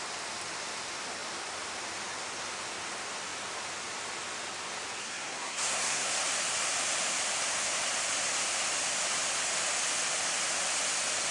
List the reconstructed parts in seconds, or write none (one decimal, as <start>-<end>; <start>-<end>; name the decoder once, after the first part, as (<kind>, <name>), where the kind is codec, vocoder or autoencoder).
5.0-6.1 (codec, SNAC)